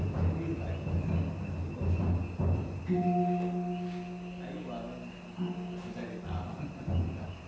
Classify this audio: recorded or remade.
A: recorded